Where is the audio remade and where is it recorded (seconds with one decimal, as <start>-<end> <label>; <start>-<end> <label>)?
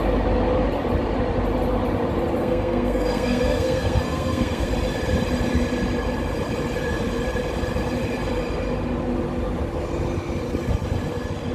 0.0-2.4 recorded; 2.4-4.7 remade; 4.7-11.5 recorded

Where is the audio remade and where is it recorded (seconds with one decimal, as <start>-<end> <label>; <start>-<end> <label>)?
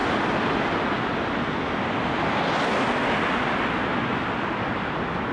0.0-5.3 recorded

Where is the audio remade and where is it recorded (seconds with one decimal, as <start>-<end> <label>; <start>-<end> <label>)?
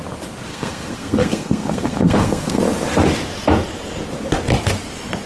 0.0-0.5 recorded; 0.5-2.6 remade; 2.6-5.3 recorded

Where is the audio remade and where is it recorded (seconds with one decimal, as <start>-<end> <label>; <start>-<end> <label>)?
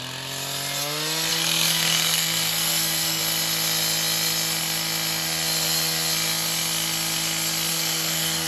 0.0-1.3 recorded; 1.3-3.2 remade; 3.2-7.7 recorded; 7.7-8.5 remade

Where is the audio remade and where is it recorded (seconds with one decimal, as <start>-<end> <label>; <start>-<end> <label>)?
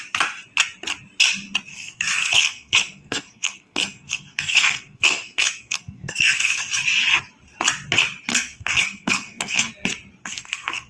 0.0-1.7 recorded; 1.7-6.7 remade; 6.7-8.3 recorded; 8.3-9.7 remade; 9.7-10.2 recorded; 10.2-10.9 remade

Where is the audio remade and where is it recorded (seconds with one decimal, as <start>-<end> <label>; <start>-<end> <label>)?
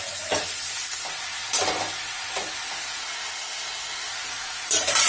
0.0-3.0 recorded; 3.0-4.1 remade; 4.1-5.1 recorded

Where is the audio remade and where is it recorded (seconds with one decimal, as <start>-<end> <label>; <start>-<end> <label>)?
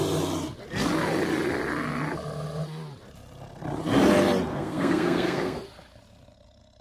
0.0-4.5 recorded; 4.5-5.6 remade; 5.6-6.8 recorded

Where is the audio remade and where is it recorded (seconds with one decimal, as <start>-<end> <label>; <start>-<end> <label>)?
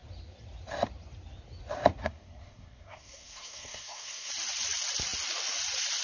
0.0-2.0 recorded; 2.0-4.3 remade; 4.3-6.0 recorded